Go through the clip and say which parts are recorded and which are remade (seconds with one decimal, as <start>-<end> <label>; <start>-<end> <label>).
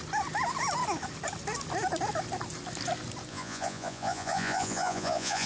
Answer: 0.0-3.3 recorded; 3.3-5.5 remade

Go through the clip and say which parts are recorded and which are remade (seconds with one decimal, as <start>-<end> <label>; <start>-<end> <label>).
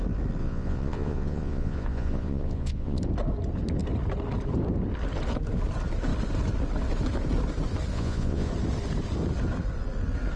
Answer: 0.0-0.4 recorded; 0.4-3.0 remade; 3.0-7.9 recorded; 7.9-8.5 remade; 8.5-10.4 recorded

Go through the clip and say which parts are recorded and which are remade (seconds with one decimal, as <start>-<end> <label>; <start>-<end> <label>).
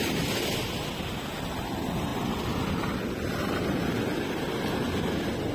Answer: 0.0-5.5 recorded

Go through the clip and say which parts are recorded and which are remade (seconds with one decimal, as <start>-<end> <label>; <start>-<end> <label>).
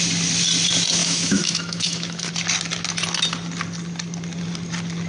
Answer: 0.0-1.0 recorded; 1.0-2.3 remade; 2.3-5.1 recorded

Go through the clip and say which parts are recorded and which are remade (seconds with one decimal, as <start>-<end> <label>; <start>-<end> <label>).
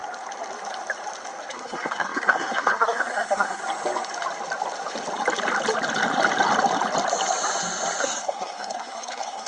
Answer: 0.0-1.5 recorded; 1.5-3.6 remade; 3.6-8.0 recorded; 8.0-9.5 remade